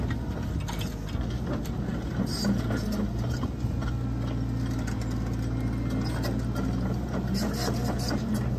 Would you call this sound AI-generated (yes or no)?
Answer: no